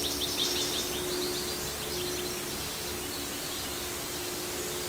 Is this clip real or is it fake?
real